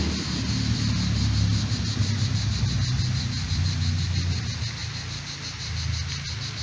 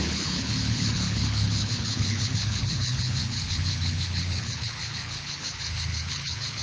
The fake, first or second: second